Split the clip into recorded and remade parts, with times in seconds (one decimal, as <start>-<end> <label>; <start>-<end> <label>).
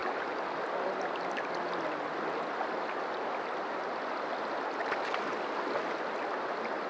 0.0-6.9 recorded